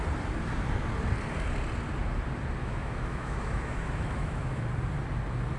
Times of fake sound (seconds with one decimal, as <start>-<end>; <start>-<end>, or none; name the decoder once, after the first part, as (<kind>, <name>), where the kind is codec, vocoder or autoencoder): 2.6-4.7 (autoencoder, DAC-VAE)